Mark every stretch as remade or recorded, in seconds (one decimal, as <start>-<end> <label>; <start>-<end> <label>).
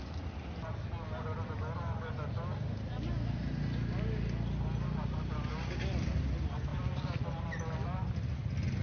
0.0-8.8 recorded